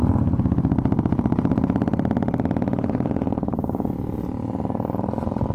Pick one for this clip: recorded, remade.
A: recorded